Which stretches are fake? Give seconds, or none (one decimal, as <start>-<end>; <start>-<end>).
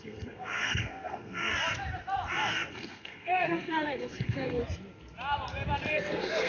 0.0-1.5; 2.7-4.6; 5.9-6.5